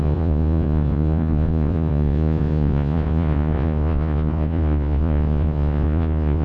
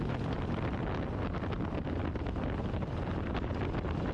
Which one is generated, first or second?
first